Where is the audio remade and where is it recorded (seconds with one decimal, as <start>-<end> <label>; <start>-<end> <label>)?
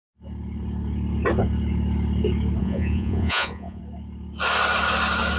0.0-2.6 recorded; 2.6-3.8 remade; 3.8-5.4 recorded